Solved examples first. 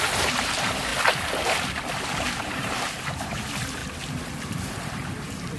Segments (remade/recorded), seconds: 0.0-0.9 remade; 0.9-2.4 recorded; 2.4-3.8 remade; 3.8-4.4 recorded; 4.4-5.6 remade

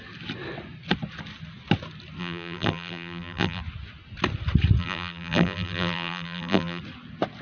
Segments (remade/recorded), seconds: 0.0-2.2 recorded; 2.2-3.6 remade; 3.6-4.8 recorded; 4.8-6.8 remade; 6.8-7.4 recorded

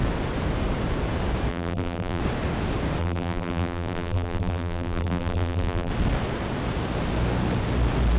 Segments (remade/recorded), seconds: 0.0-1.5 recorded; 1.5-2.2 remade; 2.2-3.0 recorded; 3.0-5.9 remade; 5.9-8.2 recorded

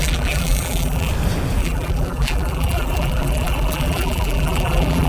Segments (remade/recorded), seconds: 0.0-1.1 remade; 1.1-1.6 recorded; 1.6-5.1 remade

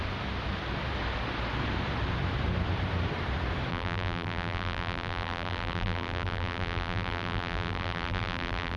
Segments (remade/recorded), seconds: 0.0-3.7 recorded; 3.7-8.8 remade